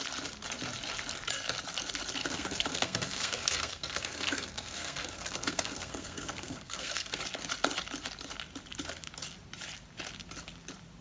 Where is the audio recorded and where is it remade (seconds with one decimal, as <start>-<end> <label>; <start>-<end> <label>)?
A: 0.0-2.2 recorded; 2.2-7.2 remade; 7.2-11.0 recorded